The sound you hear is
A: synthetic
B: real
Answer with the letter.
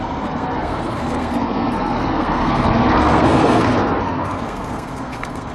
A